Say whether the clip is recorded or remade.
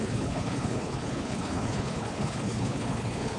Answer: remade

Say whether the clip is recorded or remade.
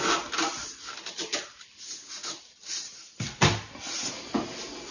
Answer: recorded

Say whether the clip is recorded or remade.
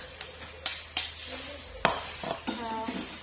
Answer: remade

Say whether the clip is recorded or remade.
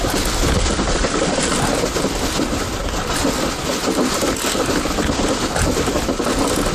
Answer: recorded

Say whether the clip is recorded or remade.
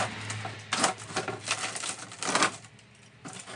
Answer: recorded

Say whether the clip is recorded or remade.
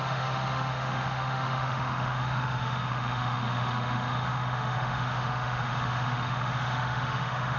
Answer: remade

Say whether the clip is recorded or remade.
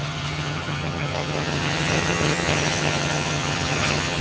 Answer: remade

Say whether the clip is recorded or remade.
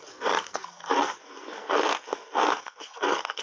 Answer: remade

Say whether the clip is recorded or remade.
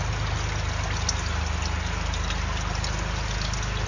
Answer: recorded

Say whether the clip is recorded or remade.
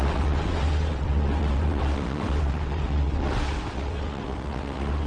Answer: remade